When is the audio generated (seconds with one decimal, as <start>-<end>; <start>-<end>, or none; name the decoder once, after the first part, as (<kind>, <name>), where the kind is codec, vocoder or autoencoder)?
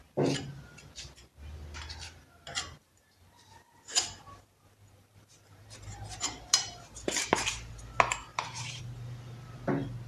2.8-7.7 (vocoder, BigVGAN v2); 8.3-8.8